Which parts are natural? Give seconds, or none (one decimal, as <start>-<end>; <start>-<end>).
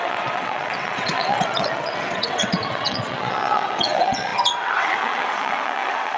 none